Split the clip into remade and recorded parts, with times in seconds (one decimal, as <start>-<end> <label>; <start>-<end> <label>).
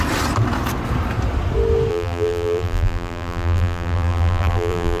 0.0-1.9 recorded; 1.9-5.0 remade